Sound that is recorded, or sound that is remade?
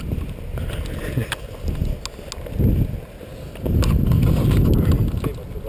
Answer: recorded